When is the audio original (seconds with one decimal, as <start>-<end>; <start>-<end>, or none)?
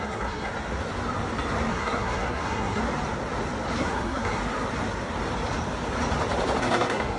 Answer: 0.5-1.7; 2.8-3.8; 4.4-6.6